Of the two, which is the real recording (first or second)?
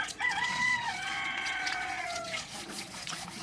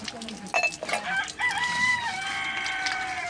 second